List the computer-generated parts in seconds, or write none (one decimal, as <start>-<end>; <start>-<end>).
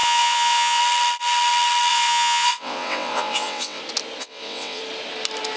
0.0-0.8; 1.9-3.8; 4.2-4.8